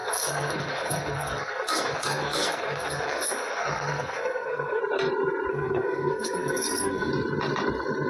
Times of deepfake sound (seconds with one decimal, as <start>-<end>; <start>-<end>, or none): 0.0-4.8; 5.5-7.1